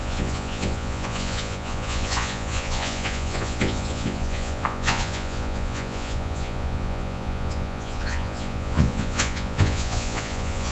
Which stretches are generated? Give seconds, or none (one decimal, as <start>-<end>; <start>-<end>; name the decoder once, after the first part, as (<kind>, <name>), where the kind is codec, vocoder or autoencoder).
0.0-10.7 (vocoder, Vocos)